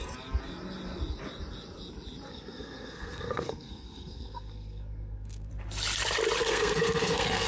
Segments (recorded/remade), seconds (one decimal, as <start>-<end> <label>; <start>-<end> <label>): 0.0-2.3 recorded; 2.3-5.5 remade; 5.5-6.4 recorded; 6.4-7.5 remade